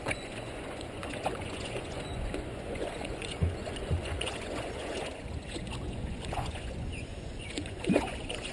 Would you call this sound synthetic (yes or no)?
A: yes